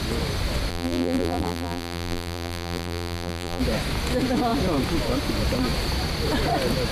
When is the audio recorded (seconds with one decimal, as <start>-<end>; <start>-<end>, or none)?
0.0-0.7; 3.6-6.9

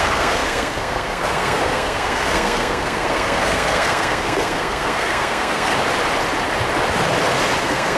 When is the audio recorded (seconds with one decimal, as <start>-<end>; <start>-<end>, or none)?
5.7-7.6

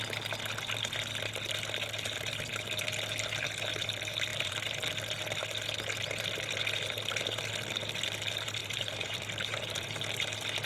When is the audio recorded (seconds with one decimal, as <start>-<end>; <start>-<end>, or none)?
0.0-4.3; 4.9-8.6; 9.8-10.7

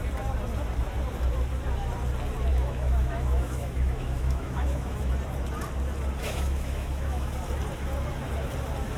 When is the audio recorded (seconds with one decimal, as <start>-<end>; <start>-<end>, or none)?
0.0-2.5; 5.1-6.2; 7.3-9.0

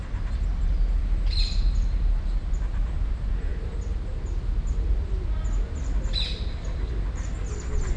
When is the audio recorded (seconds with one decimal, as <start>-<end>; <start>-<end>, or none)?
0.0-0.5; 3.1-3.5; 6.9-8.0

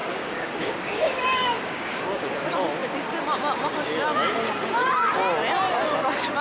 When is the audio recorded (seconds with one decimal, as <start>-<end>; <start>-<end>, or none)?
2.3-6.4

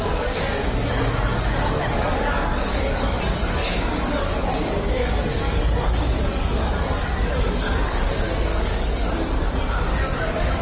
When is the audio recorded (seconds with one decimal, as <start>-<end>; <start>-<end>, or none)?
0.0-1.3; 3.2-3.6; 8.1-8.5; 9.1-9.9

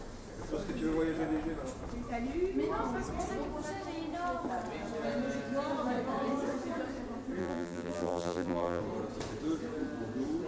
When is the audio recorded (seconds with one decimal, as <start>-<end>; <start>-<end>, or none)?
0.0-7.4; 8.8-10.5